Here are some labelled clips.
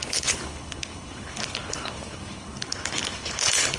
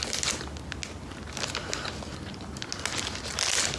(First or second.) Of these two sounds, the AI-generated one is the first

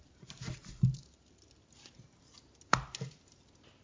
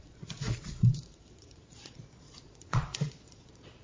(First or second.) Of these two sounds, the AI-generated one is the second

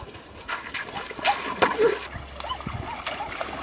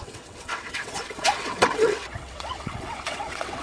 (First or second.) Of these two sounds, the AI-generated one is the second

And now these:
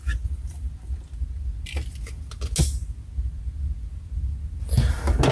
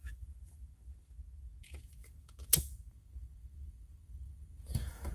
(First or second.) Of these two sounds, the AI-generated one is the second